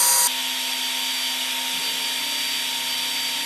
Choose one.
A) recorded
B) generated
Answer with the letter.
A